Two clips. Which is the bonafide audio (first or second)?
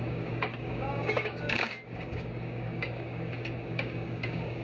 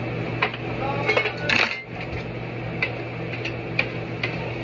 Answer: second